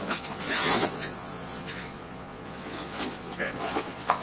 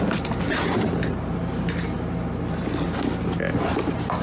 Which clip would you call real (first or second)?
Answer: second